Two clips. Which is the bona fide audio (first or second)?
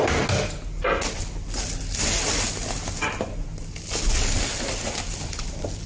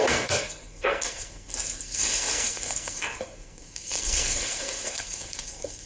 first